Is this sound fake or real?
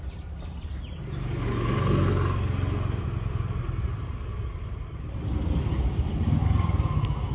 real